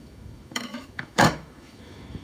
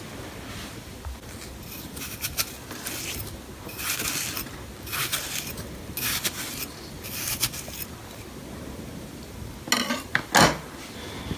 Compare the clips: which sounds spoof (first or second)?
first